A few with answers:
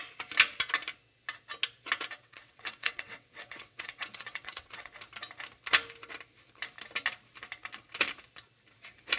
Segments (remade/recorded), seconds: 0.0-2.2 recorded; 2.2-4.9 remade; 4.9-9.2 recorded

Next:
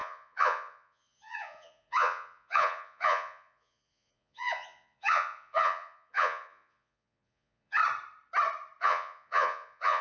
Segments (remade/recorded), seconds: 0.0-7.8 remade; 7.8-8.8 recorded; 8.8-10.0 remade